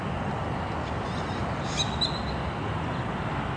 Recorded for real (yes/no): yes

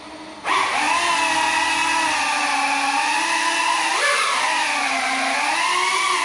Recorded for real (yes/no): yes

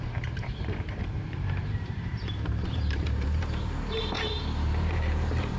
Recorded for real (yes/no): no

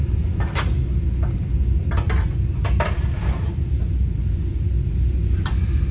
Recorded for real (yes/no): yes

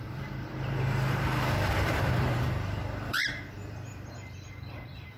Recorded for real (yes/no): no